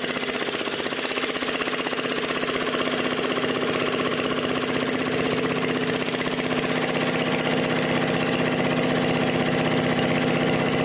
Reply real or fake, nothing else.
real